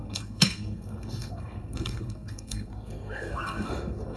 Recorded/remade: remade